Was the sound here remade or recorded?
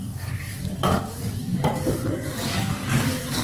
remade